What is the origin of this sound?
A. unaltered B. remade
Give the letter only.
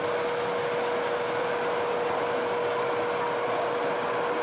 A